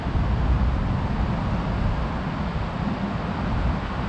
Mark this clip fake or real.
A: real